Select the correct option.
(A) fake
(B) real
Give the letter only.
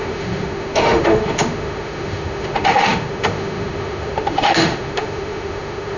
A